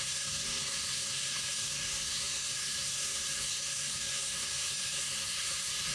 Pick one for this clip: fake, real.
fake